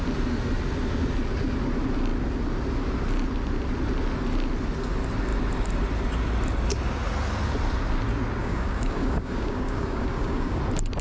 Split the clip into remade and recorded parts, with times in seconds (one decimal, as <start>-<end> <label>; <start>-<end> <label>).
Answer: 0.0-8.4 recorded; 8.4-10.6 remade; 10.6-11.0 recorded